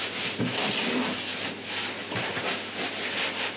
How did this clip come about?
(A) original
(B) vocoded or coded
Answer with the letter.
A